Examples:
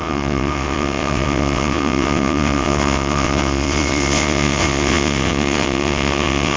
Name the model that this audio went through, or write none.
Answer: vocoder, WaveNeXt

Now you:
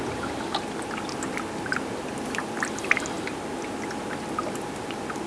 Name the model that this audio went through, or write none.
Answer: none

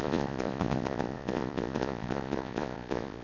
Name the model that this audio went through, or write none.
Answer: vocoder, Vocos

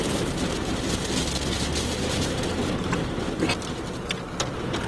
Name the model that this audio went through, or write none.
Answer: none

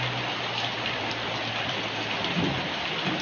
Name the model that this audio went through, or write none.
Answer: vocoder, BigVGAN v2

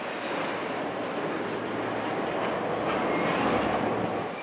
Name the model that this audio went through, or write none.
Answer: none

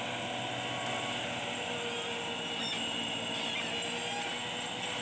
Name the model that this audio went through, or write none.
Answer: none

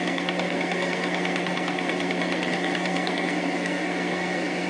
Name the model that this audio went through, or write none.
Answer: codec, SNAC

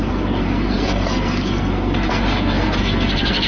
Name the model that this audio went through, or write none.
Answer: codec, SNAC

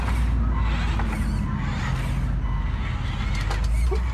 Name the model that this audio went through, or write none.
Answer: none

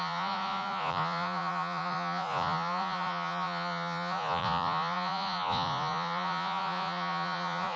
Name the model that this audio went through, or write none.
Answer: vocoder, Vocos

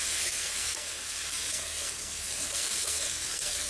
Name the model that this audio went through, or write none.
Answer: codec, SNAC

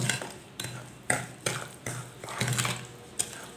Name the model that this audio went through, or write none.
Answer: none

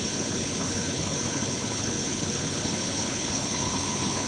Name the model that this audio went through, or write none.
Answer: codec, HILCodec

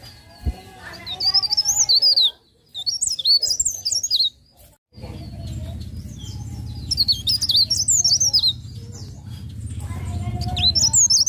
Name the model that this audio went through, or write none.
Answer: none